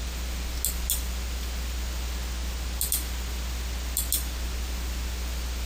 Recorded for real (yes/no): yes